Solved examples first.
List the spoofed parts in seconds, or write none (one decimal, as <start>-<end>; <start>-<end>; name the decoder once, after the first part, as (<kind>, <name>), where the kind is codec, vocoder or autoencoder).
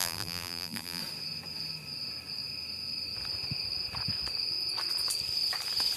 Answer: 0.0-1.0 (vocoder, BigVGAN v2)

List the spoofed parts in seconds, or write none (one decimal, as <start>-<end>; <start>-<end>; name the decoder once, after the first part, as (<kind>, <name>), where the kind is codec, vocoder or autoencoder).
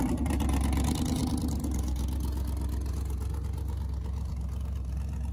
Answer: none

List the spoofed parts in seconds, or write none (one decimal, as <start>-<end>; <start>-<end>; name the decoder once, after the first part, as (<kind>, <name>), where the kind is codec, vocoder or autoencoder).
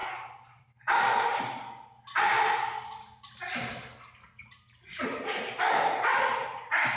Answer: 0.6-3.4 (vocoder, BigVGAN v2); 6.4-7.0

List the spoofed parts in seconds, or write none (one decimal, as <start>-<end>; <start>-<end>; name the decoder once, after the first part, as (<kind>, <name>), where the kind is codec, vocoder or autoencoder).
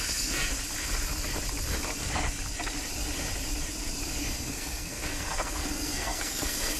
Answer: 0.0-0.5 (codec, SNAC); 4.2-6.8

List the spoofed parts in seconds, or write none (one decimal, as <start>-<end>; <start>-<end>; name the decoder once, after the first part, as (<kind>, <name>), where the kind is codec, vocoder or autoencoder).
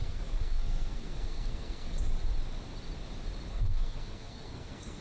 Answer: 0.0-2.0 (codec, SNAC); 3.5-5.0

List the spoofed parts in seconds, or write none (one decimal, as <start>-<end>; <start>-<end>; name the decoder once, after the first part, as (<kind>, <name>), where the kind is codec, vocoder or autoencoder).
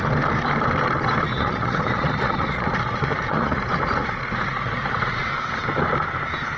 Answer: 1.3-5.3 (vocoder, Vocos)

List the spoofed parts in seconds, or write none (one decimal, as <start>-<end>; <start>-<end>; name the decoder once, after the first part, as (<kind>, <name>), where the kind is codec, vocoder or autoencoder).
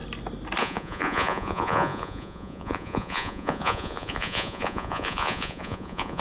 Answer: 0.6-6.2 (vocoder, Vocos)